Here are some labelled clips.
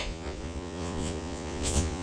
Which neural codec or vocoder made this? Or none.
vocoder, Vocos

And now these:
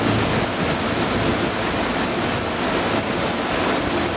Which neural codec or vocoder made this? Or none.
none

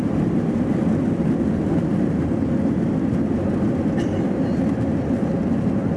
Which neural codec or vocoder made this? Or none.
none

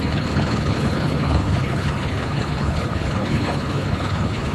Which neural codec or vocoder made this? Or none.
codec, HILCodec